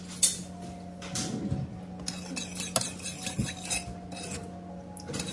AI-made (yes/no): no